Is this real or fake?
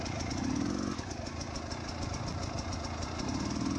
real